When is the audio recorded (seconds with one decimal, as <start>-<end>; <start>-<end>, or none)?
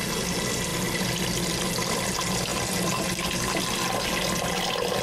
0.0-5.0